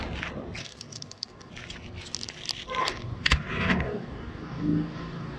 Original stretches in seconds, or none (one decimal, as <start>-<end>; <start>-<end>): 0.0-0.6; 1.5-2.8